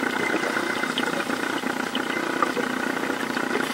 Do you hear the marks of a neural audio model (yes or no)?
no